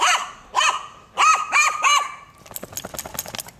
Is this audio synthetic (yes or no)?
no